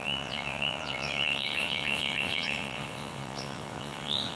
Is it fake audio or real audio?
fake